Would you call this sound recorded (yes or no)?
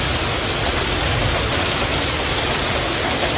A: yes